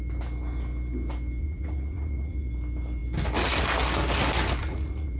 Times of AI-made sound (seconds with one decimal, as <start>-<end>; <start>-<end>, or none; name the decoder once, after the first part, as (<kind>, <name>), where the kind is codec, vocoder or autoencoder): 1.4-2.5 (vocoder, Vocos); 4.6-5.2